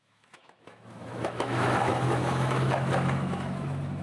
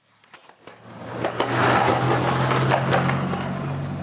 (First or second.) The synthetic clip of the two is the first